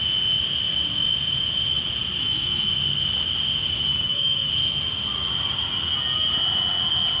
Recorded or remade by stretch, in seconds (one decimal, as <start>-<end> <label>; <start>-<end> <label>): 0.0-2.2 recorded; 2.2-2.7 remade; 2.7-3.9 recorded; 3.9-4.5 remade; 4.5-7.2 recorded